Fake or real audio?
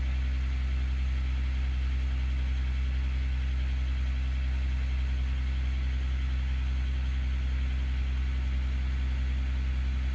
real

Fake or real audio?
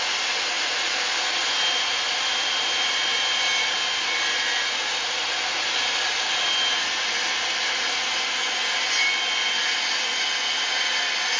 real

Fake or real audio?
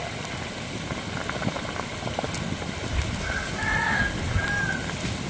real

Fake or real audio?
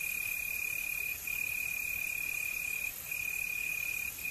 real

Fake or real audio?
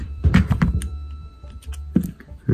fake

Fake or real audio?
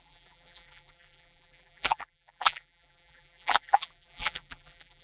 fake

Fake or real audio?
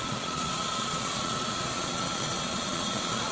fake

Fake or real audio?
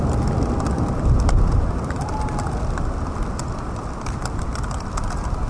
real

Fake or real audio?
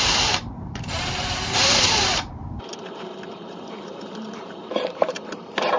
fake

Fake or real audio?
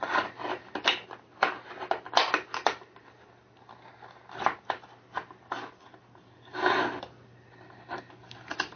real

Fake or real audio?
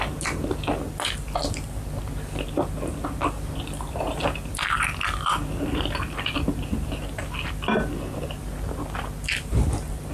real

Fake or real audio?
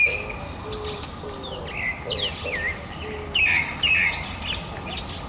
real